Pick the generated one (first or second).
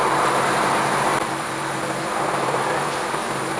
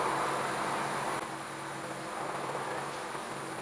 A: first